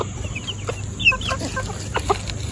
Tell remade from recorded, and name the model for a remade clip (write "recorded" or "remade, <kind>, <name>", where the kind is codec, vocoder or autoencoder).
recorded